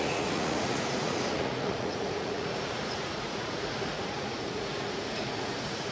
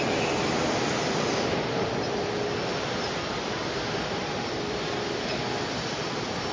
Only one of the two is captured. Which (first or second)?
second